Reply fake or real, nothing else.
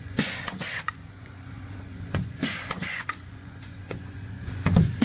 fake